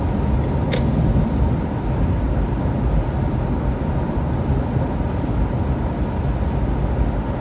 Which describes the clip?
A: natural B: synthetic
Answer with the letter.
A